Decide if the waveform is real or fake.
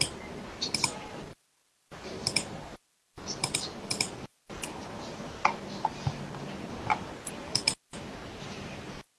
real